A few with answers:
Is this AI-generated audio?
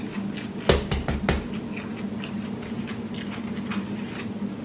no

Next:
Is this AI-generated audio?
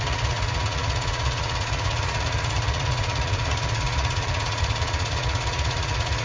yes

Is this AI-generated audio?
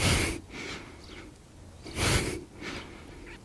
no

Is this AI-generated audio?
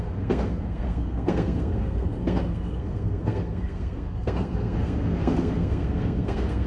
yes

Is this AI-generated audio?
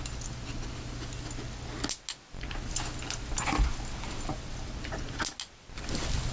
no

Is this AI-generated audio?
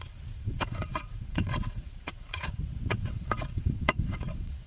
yes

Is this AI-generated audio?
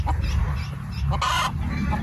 no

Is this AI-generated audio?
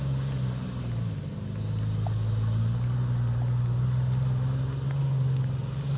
no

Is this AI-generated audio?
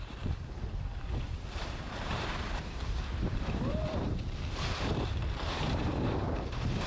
yes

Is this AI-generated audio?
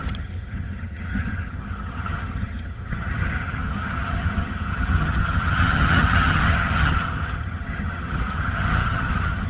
yes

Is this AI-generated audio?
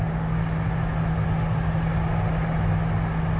no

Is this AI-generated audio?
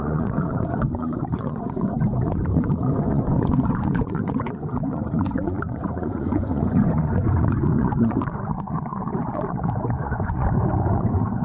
yes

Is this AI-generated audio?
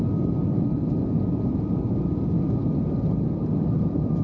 no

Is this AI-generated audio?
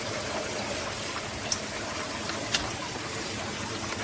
no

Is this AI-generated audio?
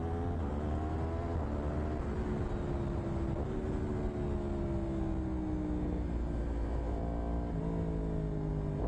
no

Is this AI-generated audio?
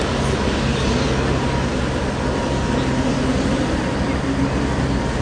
no